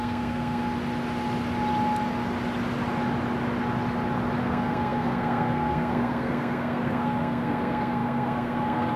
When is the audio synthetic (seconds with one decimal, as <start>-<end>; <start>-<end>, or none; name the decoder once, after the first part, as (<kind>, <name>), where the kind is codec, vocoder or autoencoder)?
0.0-0.6 (codec, SNAC); 4.4-9.0